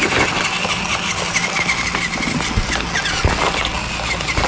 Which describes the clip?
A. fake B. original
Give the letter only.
B